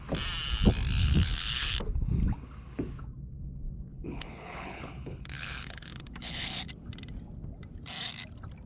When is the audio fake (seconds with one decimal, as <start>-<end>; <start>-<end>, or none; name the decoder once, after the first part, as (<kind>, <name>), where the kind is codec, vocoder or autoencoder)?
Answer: 1.0-1.8 (codec, HILCodec); 3.9-6.7